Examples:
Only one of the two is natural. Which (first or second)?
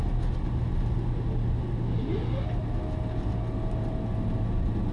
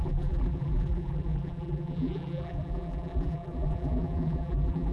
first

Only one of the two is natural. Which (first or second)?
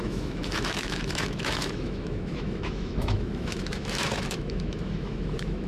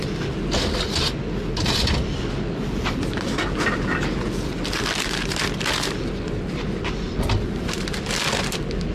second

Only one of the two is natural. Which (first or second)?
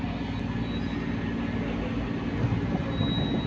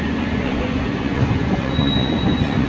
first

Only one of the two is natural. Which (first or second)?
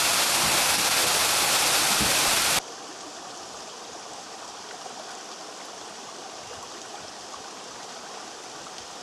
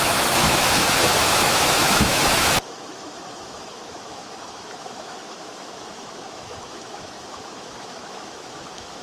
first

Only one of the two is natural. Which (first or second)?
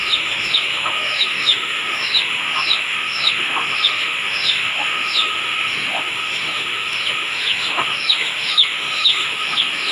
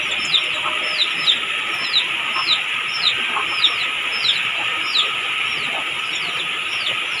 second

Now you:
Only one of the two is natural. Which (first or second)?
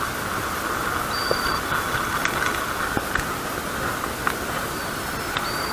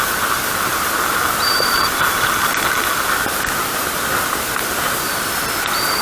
first